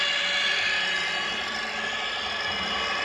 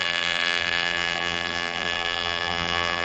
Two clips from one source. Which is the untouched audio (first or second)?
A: first